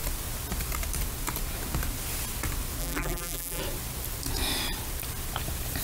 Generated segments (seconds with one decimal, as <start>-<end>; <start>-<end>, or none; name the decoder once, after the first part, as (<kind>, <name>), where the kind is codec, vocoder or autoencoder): 2.8-3.6 (vocoder, BigVGAN v2)